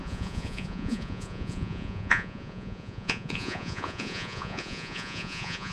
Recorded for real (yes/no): no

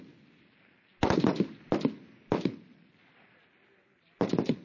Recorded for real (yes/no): yes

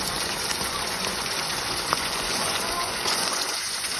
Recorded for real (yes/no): no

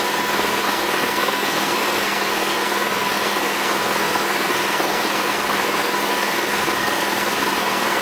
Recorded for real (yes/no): no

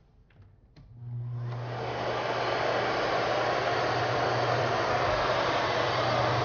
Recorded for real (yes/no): yes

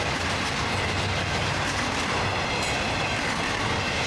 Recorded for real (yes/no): yes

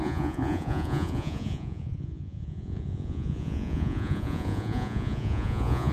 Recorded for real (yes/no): no